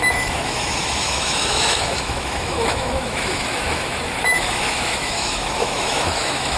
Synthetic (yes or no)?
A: yes